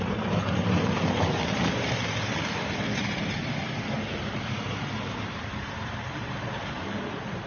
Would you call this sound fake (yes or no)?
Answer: yes